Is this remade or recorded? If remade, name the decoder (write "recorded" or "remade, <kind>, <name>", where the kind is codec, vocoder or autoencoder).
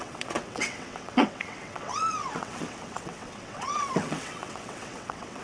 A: remade, vocoder, WaveNeXt